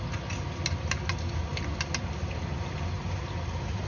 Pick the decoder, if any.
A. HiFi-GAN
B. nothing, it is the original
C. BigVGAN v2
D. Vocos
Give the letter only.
B